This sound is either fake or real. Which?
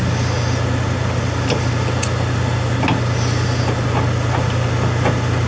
real